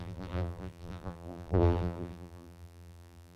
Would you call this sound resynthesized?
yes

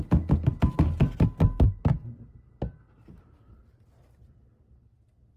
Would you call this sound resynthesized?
no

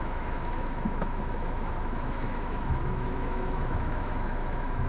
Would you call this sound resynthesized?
yes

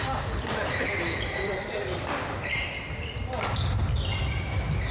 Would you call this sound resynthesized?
no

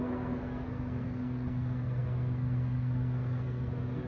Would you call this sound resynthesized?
yes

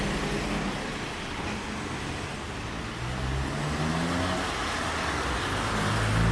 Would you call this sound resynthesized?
no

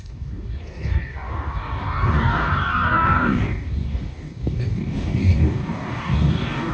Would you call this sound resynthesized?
yes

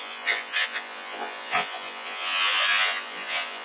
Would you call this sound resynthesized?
yes